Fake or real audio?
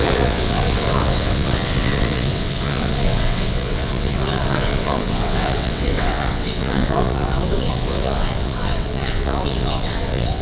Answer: fake